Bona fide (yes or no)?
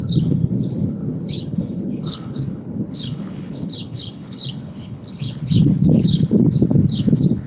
no